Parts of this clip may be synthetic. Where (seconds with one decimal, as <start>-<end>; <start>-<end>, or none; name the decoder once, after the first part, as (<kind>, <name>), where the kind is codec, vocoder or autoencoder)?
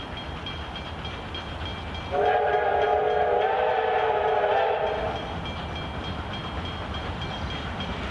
none